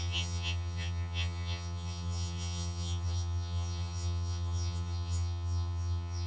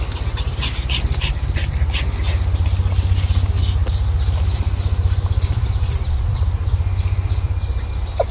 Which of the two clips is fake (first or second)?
first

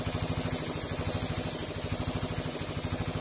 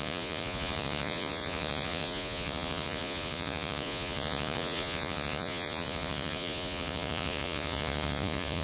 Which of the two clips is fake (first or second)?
second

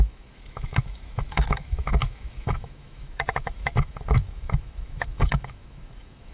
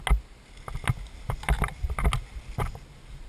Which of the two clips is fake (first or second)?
first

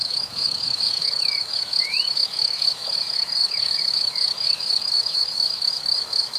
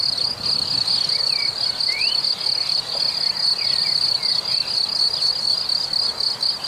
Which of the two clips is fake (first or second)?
first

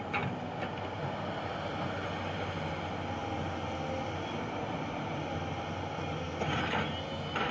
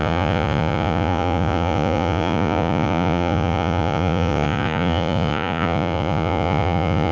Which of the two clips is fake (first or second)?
second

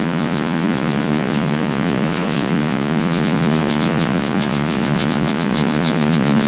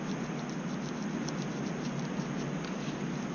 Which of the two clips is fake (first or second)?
first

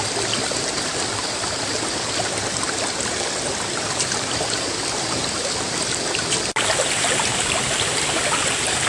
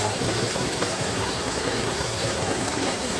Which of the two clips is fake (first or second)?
second